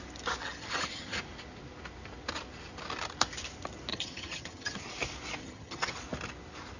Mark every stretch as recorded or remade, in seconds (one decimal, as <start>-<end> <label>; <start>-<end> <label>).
0.0-0.4 recorded; 0.4-1.2 remade; 1.2-3.9 recorded; 3.9-4.8 remade; 4.8-5.4 recorded; 5.4-5.9 remade; 5.9-6.8 recorded